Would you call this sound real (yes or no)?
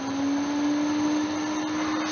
yes